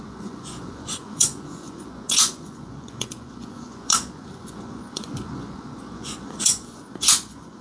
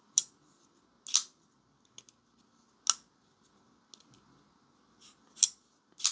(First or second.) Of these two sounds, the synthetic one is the first